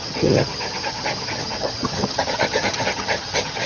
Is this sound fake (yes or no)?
yes